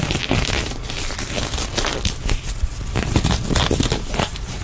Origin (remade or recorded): recorded